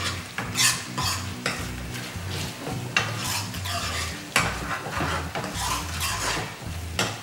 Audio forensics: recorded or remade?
recorded